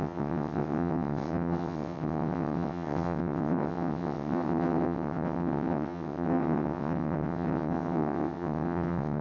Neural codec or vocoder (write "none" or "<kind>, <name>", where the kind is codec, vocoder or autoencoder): vocoder, WaveNeXt